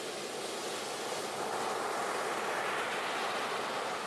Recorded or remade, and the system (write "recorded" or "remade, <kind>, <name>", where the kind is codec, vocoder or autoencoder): recorded